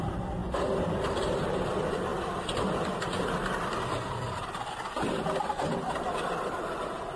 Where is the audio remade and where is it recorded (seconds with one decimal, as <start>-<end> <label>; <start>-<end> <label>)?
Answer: 0.0-7.2 recorded